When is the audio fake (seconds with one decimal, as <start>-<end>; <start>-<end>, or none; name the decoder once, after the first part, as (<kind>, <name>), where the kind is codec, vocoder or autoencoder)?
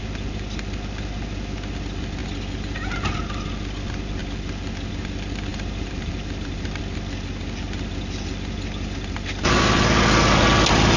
5.5-6.8 (vocoder, BigVGAN v2)